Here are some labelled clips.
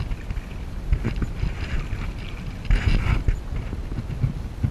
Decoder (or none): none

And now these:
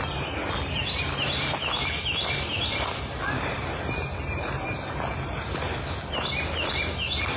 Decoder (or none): none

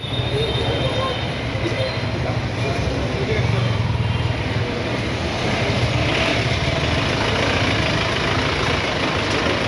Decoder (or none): none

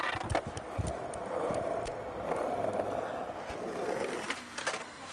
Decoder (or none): none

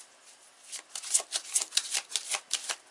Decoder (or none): none